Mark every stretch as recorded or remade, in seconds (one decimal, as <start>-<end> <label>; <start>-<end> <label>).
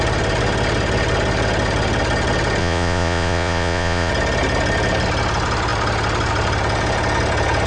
0.0-2.6 recorded; 2.6-4.1 remade; 4.1-7.7 recorded